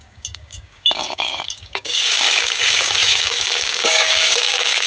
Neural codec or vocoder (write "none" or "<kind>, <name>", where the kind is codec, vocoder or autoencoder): codec, DAC